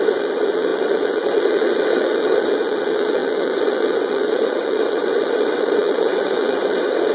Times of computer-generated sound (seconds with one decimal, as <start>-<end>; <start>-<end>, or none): 0.0-7.1